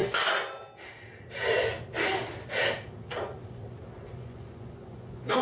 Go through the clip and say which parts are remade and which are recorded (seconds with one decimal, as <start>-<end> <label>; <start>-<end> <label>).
0.0-3.2 recorded; 3.2-3.6 remade; 3.6-4.2 recorded; 4.2-5.4 remade